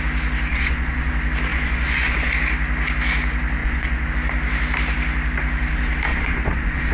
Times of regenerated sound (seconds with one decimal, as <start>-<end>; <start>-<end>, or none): 0.5-1.1; 1.5-2.3; 3.6-4.1; 6.1-6.9